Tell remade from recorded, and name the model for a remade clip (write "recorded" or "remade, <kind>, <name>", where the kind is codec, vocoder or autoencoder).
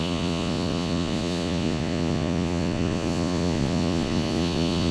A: remade, vocoder, Vocos